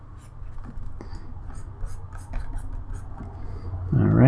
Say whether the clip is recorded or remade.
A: recorded